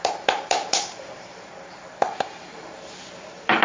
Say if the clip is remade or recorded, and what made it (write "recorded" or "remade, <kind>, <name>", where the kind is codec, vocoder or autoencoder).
remade, vocoder, BigVGAN v2